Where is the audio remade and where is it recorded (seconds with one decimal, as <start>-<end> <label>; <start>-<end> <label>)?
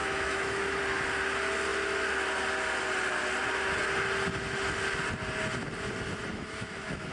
0.0-0.8 remade; 0.8-6.3 recorded; 6.3-7.1 remade